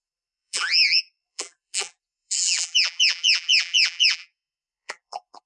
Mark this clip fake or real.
fake